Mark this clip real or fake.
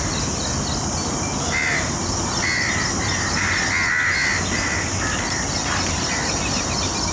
real